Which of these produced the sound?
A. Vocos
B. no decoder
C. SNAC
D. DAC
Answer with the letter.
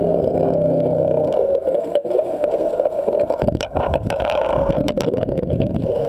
C